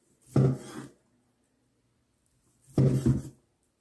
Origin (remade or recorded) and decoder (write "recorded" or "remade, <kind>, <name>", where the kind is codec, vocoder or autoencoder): recorded